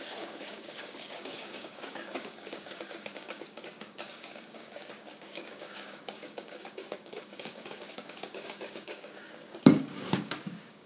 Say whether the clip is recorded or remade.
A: remade